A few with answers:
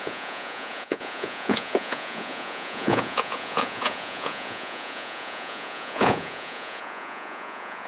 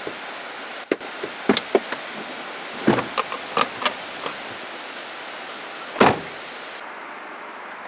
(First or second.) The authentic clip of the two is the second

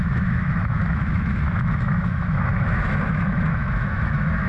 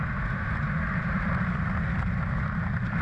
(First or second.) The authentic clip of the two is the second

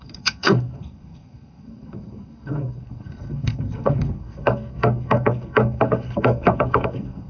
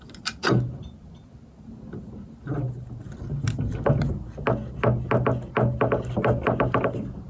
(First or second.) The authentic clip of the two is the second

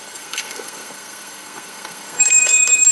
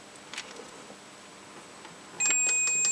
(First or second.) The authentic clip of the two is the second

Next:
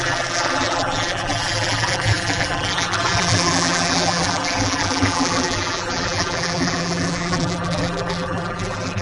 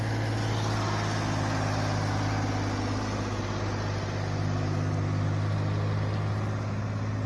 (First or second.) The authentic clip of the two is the second